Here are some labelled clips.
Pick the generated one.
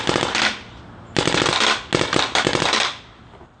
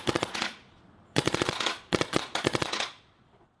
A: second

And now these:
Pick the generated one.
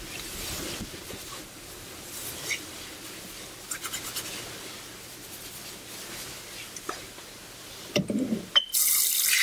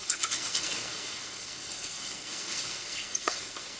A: second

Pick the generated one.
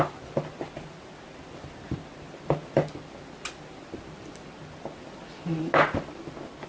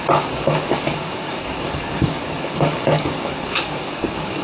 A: second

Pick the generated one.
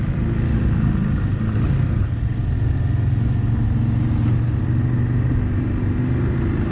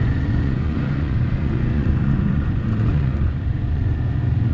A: second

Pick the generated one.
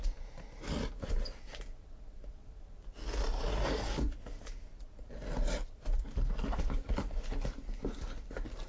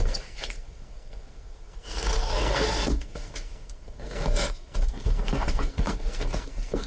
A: second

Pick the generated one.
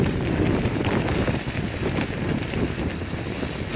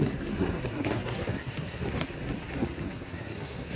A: second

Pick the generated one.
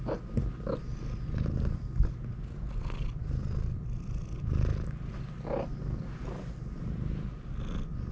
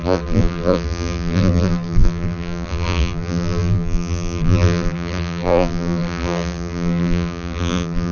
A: second